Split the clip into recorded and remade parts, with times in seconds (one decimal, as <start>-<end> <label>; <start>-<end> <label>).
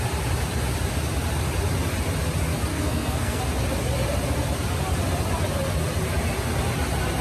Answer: 0.0-2.7 recorded; 2.7-3.4 remade; 3.4-7.2 recorded